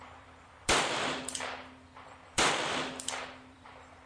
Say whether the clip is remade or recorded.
remade